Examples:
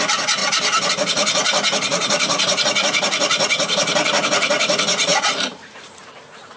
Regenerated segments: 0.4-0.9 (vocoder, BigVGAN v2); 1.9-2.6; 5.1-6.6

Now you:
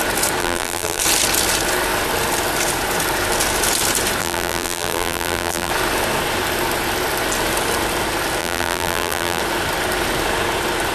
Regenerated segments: 0.4-1.0 (vocoder, BigVGAN v2); 4.2-5.7; 8.4-9.4

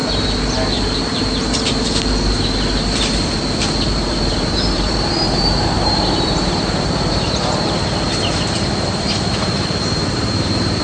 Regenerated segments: 3.8-10.8 (vocoder, BigVGAN v2)

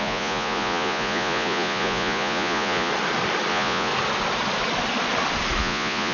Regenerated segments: 0.0-2.9 (vocoder, Vocos); 3.5-3.9; 5.6-6.1